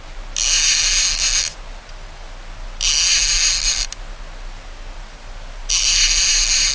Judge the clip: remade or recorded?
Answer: recorded